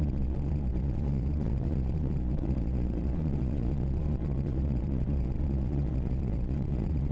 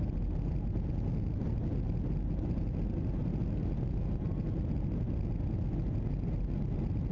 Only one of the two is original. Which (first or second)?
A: second